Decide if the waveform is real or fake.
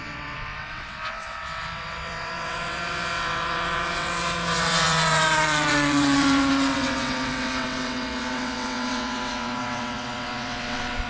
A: fake